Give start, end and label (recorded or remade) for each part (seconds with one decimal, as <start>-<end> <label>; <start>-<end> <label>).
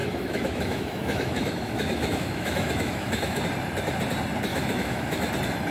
0.0-3.4 remade; 3.4-4.5 recorded; 4.5-5.3 remade; 5.3-5.7 recorded